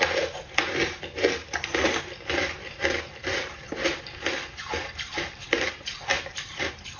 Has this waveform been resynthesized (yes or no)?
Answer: yes